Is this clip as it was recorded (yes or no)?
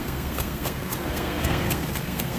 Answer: no